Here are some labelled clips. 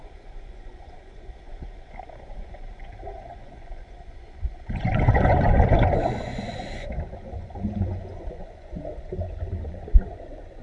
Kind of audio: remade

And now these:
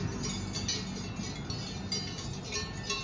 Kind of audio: recorded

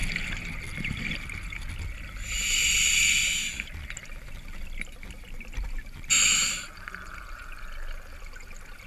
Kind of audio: recorded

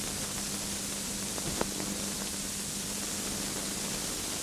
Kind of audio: recorded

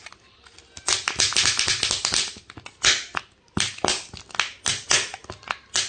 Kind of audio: recorded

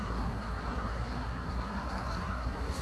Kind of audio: remade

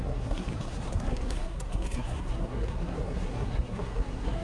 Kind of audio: remade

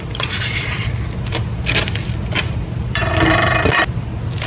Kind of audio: remade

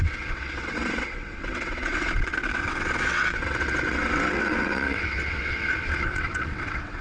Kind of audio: remade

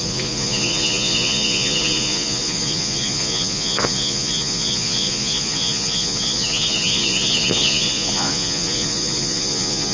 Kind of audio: remade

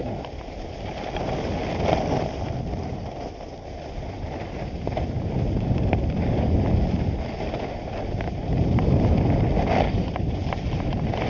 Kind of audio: recorded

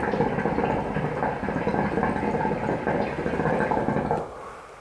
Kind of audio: recorded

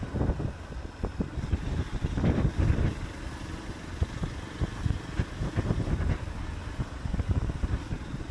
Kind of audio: recorded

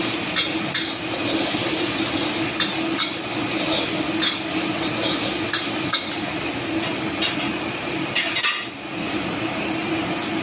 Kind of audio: recorded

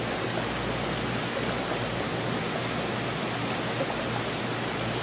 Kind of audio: recorded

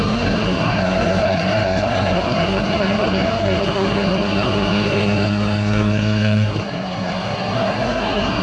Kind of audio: remade